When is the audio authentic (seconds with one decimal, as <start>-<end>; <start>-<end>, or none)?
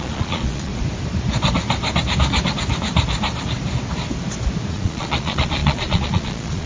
0.7-4.7